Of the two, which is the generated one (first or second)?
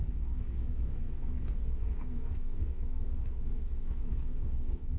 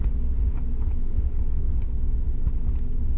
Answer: first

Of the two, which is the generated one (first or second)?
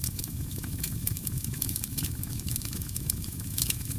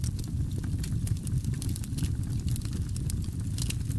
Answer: first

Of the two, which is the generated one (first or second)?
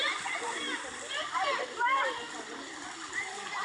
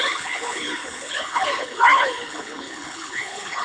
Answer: second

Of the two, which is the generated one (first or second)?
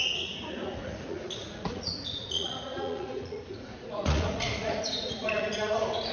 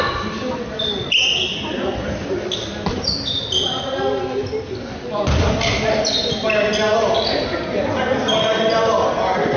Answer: first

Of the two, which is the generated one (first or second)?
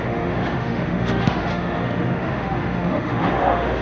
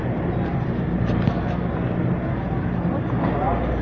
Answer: first